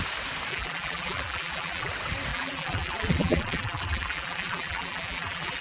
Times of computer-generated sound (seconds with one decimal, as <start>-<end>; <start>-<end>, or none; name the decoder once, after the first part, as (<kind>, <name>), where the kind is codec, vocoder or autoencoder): 0.5-1.9 (vocoder, BigVGAN v2); 2.3-5.6